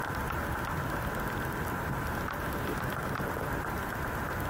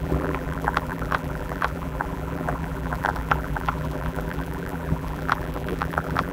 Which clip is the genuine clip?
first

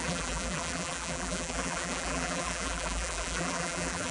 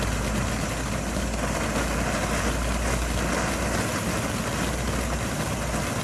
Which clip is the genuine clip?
second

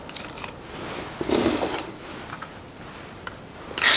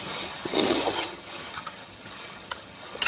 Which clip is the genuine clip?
first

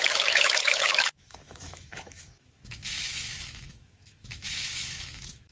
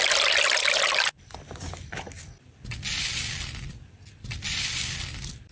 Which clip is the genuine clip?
second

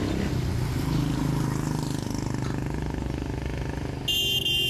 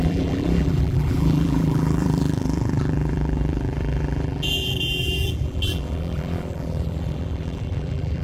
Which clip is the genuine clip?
first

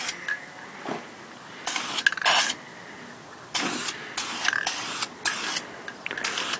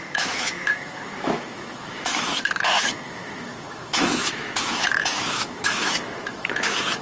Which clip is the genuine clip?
first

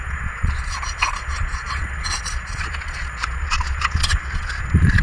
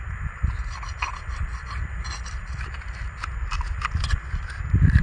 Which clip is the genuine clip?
second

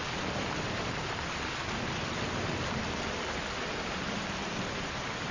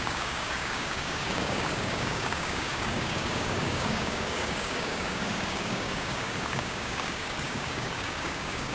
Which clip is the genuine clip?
first